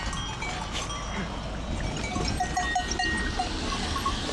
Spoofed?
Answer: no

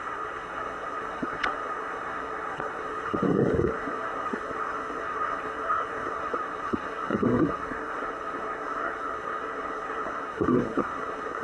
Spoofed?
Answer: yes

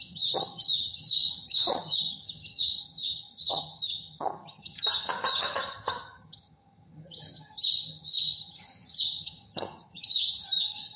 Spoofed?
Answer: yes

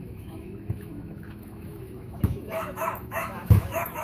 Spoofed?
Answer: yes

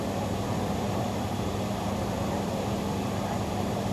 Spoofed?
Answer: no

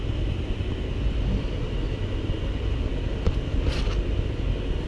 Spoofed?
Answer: no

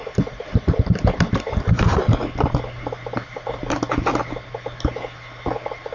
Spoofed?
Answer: no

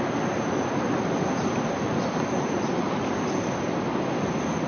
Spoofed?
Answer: no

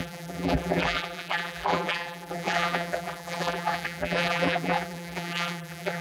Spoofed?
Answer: yes